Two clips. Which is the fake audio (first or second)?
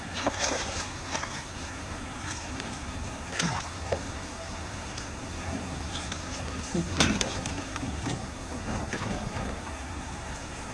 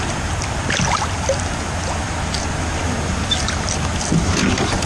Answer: first